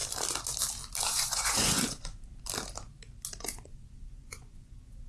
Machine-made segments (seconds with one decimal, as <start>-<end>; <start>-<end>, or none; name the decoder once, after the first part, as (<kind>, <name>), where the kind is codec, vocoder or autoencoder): 1.0-2.1 (vocoder, Vocos); 3.4-5.1